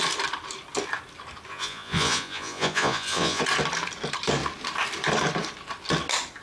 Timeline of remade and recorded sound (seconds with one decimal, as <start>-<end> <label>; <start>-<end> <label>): 0.0-1.5 recorded; 1.5-3.4 remade; 3.4-6.4 recorded